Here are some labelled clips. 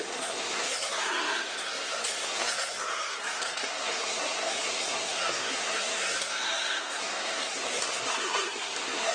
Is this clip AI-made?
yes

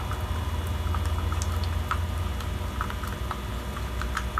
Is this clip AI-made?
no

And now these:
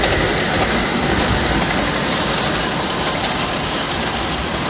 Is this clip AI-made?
no